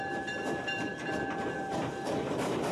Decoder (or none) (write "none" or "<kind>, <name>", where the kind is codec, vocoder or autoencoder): vocoder, BigVGAN v2